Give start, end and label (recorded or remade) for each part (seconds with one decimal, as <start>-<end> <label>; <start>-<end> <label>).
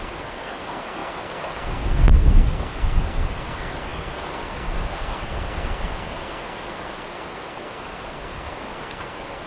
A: 0.0-9.5 remade